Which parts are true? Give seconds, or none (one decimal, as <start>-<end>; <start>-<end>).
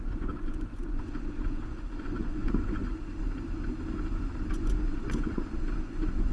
2.8-4.5